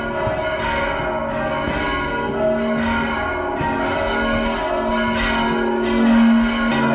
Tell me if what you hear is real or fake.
real